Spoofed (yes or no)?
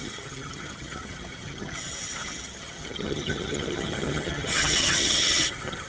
yes